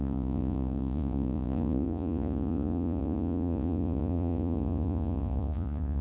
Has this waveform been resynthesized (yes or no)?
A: yes